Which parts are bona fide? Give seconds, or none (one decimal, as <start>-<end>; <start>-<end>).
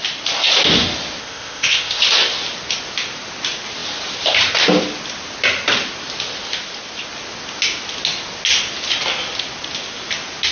0.0-1.2; 2.0-10.5